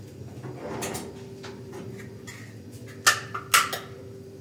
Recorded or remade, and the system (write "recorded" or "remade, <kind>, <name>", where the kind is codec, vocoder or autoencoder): recorded